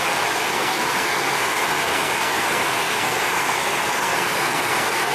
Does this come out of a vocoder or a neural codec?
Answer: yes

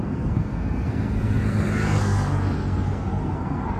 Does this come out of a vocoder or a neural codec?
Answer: yes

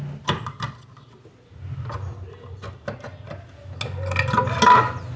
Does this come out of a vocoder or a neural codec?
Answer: no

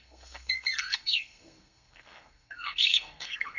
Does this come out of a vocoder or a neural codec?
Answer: yes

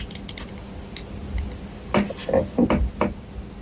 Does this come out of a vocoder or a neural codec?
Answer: no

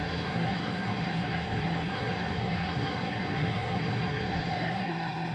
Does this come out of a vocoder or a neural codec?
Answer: yes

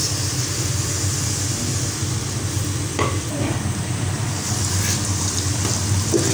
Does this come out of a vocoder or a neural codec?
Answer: no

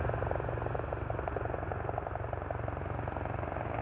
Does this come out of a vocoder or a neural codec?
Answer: no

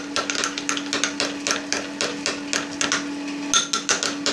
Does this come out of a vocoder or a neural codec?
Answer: no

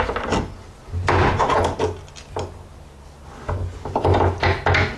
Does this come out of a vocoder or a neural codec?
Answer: no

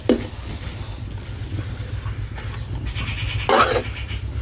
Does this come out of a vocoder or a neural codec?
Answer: no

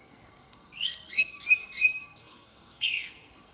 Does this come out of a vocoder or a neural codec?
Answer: yes